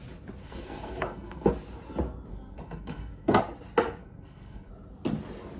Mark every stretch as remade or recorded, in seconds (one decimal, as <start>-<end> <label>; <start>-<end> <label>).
0.0-0.4 recorded; 0.4-1.5 remade; 1.5-2.3 recorded; 2.3-3.4 remade; 3.4-4.0 recorded; 4.0-4.7 remade; 4.7-5.6 recorded